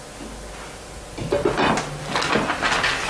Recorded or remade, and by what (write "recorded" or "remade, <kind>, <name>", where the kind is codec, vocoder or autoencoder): recorded